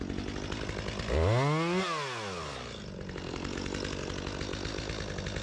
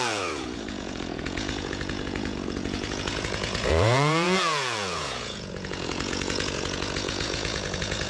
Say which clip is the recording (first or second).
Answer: first